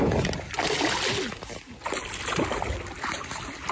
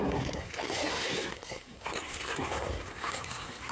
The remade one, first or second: second